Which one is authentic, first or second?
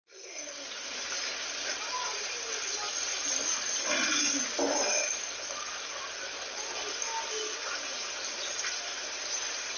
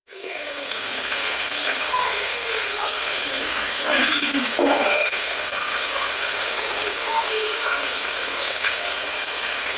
first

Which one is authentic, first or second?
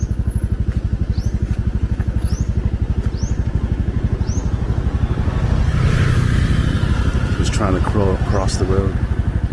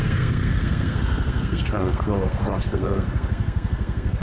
first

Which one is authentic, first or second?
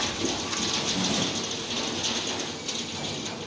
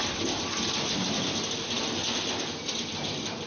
first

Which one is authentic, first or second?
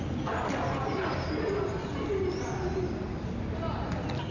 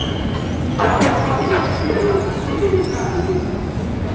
first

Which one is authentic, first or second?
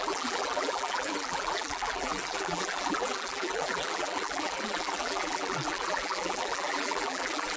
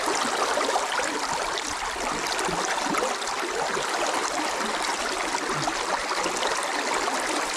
second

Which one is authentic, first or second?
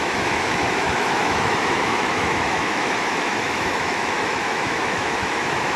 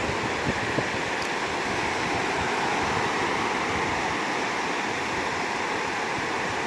second